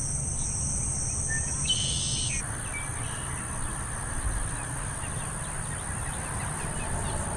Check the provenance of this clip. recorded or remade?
recorded